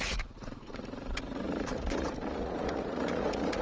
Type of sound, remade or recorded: remade